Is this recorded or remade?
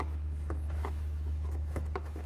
remade